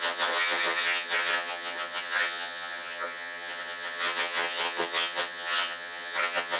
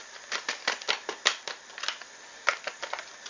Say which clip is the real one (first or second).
second